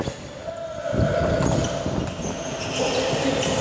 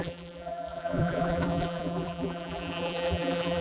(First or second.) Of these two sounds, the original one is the first